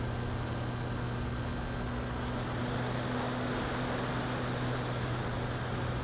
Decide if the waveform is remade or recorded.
recorded